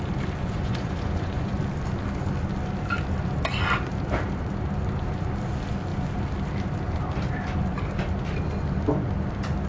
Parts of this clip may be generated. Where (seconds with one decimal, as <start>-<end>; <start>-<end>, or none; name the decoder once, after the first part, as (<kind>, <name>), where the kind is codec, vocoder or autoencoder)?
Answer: 0.4-1.6 (vocoder, Vocos)